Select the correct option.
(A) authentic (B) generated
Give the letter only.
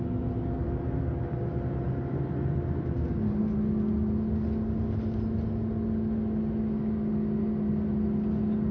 A